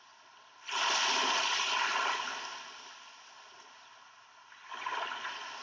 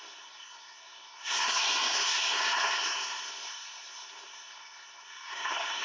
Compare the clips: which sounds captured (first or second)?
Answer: first